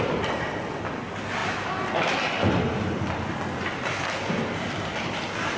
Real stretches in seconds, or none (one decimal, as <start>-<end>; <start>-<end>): 0.0-5.6